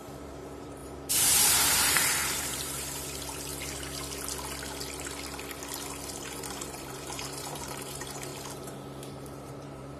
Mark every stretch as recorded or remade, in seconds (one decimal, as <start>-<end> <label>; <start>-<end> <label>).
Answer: 0.0-3.5 remade; 3.5-6.5 recorded; 6.5-8.3 remade; 8.3-9.1 recorded; 9.1-10.0 remade